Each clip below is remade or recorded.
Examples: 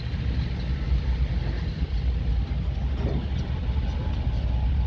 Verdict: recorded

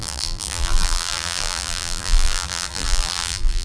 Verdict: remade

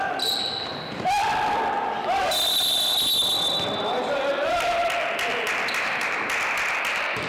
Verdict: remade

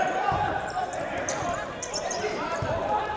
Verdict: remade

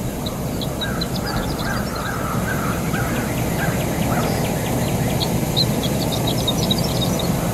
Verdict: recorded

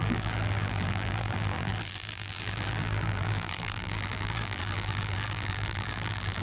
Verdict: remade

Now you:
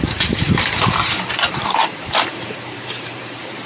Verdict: remade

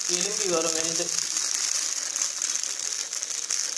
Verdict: recorded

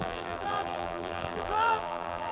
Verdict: remade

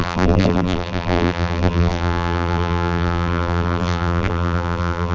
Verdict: remade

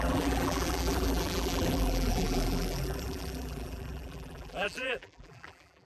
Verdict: remade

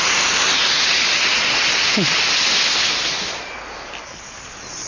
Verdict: recorded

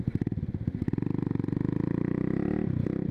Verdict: remade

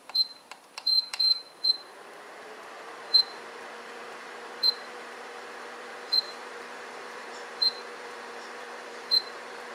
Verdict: remade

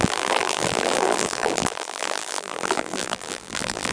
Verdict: remade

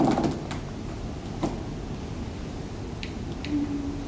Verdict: recorded